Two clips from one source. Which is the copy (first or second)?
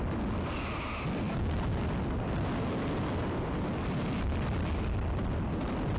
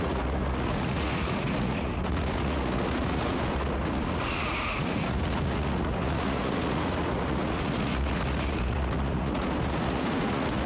second